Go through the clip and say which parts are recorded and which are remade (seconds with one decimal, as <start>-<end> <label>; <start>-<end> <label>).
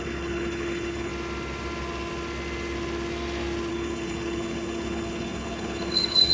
0.0-1.1 remade; 1.1-3.7 recorded; 3.7-6.3 remade